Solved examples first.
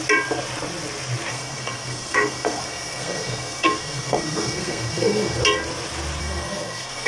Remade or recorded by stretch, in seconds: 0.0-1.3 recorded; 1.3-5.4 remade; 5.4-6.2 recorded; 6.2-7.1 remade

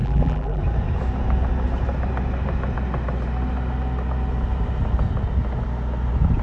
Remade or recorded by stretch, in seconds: 0.0-0.6 remade; 0.6-6.4 recorded